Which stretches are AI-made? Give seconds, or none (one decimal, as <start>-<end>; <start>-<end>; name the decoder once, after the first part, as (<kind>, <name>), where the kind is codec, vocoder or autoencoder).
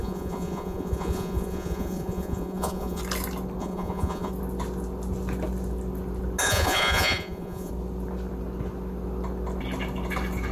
0.0-3.0 (vocoder, Vocos); 3.6-4.3; 6.4-7.7